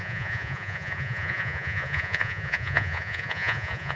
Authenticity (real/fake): fake